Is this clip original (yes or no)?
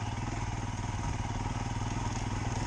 yes